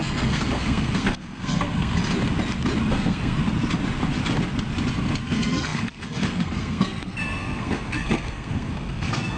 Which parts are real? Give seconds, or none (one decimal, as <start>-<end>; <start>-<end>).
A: 2.0-2.9; 3.4-5.2